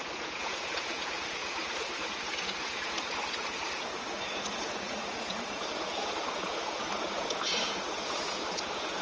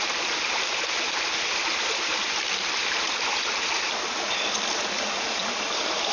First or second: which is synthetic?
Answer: first